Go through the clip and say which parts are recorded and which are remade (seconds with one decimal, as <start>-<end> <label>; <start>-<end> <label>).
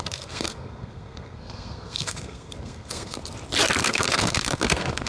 0.0-3.2 remade; 3.2-3.8 recorded; 3.8-5.1 remade